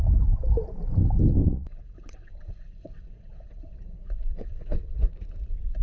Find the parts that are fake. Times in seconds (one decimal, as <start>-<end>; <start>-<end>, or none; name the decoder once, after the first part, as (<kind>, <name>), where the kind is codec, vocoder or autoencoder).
1.4-4.9 (vocoder, WaveNeXt)